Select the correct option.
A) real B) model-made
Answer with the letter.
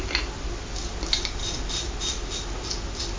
A